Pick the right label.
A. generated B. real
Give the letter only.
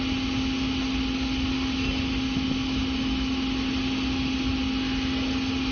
B